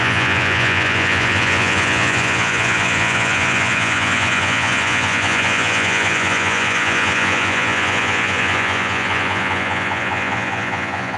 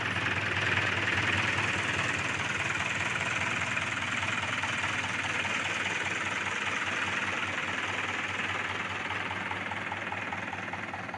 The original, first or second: second